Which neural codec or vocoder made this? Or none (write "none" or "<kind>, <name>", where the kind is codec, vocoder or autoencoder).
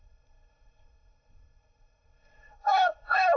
codec, SNAC